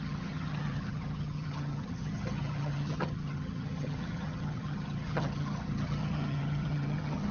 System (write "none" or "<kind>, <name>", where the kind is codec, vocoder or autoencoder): vocoder, HiFi-GAN